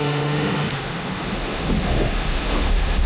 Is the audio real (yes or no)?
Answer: no